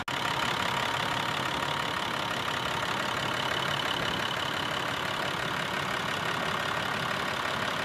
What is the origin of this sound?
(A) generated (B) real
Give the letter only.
B